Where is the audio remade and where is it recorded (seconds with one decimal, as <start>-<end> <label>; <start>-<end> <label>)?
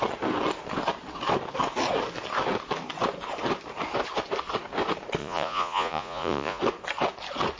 0.0-5.2 recorded; 5.2-6.6 remade; 6.6-7.6 recorded